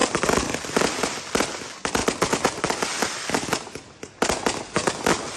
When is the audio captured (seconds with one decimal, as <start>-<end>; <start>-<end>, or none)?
0.0-5.4